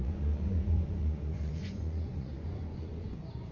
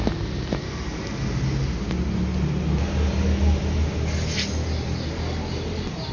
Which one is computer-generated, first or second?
first